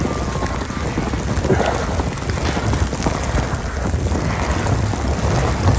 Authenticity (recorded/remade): recorded